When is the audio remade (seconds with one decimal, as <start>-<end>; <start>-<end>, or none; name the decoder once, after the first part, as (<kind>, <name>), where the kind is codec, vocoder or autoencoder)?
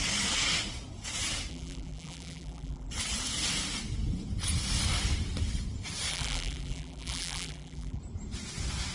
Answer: 1.5-2.9 (vocoder, BigVGAN v2); 6.1-8.0